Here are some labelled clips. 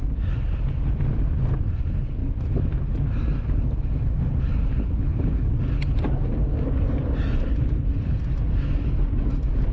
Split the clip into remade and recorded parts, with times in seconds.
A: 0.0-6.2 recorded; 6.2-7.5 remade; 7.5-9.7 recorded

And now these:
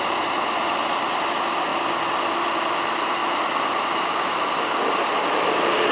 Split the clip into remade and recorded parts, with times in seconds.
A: 0.0-5.9 recorded

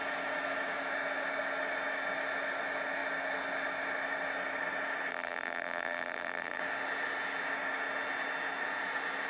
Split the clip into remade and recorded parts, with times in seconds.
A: 0.0-5.1 recorded; 5.1-6.6 remade; 6.6-9.3 recorded

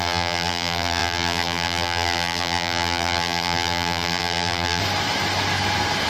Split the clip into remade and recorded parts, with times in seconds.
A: 0.0-4.8 remade; 4.8-6.1 recorded

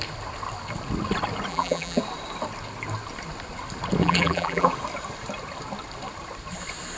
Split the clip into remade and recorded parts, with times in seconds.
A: 0.0-1.5 recorded; 1.5-2.0 remade; 2.0-4.0 recorded; 4.0-4.7 remade; 4.7-7.0 recorded

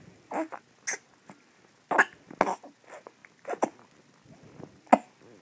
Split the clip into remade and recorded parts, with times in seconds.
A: 0.0-5.4 recorded